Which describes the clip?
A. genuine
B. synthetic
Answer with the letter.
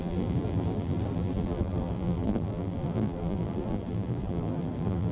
B